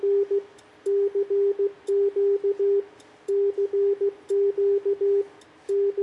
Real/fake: real